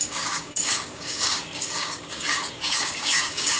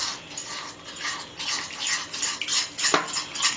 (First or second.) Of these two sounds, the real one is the second